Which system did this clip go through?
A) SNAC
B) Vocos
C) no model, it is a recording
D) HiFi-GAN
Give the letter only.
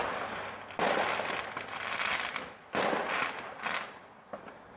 C